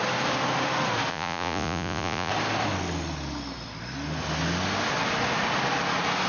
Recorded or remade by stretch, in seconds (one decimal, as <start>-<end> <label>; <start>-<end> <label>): 0.0-1.1 recorded; 1.1-2.3 remade; 2.3-6.3 recorded